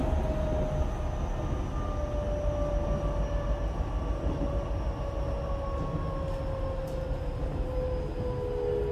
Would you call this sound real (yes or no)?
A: yes